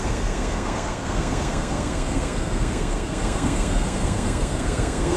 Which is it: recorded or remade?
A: remade